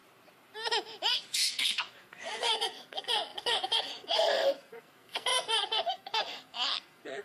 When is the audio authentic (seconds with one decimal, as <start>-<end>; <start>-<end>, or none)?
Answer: 0.0-1.1